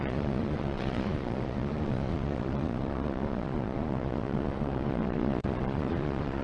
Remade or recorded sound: remade